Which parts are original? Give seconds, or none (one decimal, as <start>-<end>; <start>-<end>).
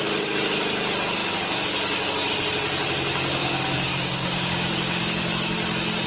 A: 0.0-3.4; 5.3-6.1